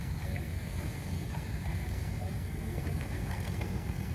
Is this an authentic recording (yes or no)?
no